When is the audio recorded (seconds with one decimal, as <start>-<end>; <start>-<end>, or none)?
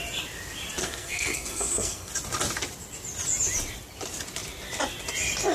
0.0-0.8; 2.1-5.5